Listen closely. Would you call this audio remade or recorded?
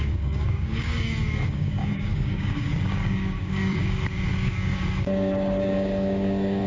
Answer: remade